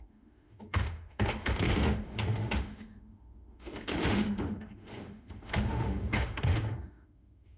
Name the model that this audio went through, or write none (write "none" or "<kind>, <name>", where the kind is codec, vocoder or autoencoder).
autoencoder, DAC-VAE